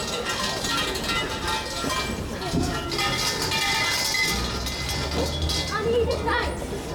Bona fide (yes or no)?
yes